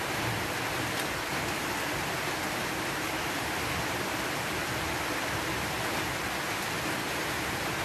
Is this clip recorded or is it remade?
recorded